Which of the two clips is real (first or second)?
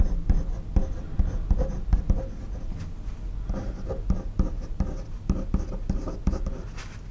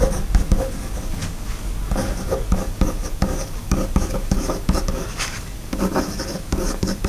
first